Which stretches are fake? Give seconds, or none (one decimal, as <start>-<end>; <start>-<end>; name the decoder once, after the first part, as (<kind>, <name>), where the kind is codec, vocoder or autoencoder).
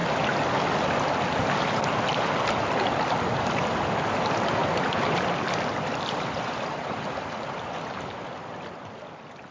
4.6-9.1 (vocoder, BigVGAN v2)